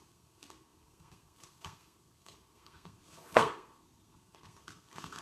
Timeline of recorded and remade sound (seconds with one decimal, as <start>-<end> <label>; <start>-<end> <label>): 0.0-5.2 remade

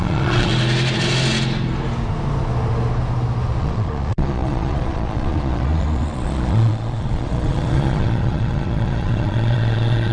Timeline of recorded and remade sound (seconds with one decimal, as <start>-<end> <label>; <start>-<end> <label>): 0.0-0.5 remade; 0.5-3.6 recorded; 3.6-10.1 remade